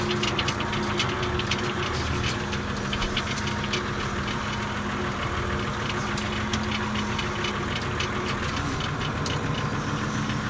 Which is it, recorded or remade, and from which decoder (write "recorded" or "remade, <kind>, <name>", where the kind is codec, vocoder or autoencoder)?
recorded